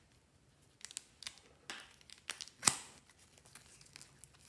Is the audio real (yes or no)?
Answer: yes